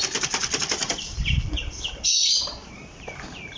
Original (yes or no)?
yes